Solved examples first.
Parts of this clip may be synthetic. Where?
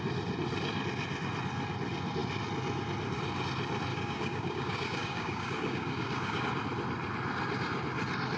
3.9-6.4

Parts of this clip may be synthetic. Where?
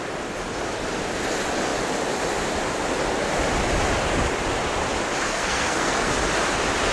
5.3-6.1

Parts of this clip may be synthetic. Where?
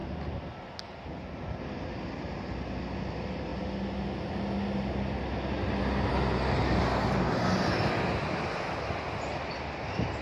none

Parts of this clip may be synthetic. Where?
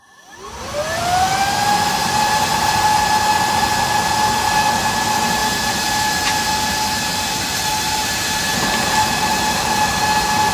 5.4-9.7